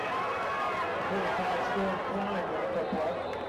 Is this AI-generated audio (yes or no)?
no